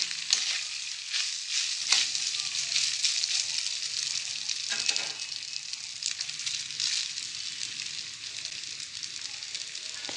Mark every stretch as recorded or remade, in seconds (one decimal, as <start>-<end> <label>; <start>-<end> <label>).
0.0-5.1 recorded; 5.1-5.7 remade; 5.7-10.2 recorded